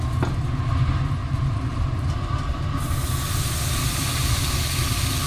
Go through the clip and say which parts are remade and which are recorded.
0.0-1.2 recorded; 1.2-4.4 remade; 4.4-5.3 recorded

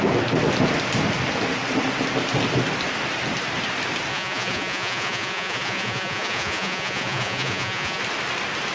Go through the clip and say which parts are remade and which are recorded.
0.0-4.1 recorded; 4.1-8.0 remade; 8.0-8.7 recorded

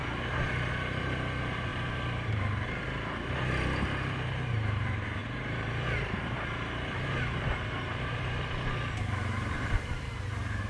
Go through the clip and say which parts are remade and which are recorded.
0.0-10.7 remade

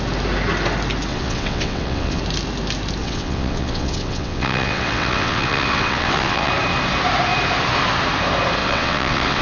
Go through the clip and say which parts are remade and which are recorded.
0.0-1.1 recorded; 1.1-2.2 remade; 2.2-3.0 recorded; 3.0-6.5 remade; 6.5-8.6 recorded; 8.6-9.4 remade

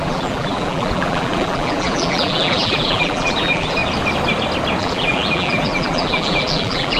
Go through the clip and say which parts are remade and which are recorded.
0.0-3.8 remade; 3.8-4.8 recorded; 4.8-7.0 remade